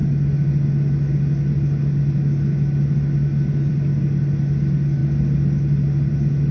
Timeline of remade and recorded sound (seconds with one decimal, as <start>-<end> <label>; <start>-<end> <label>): 0.0-6.5 recorded